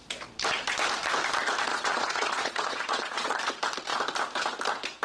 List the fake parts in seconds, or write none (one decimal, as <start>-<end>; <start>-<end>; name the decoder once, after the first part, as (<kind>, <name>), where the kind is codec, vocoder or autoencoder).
1.7-3.4 (vocoder, Vocos)